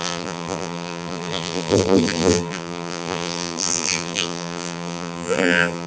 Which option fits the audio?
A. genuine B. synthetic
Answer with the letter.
B